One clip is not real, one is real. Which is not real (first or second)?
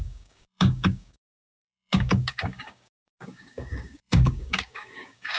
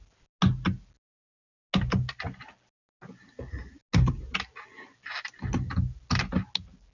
first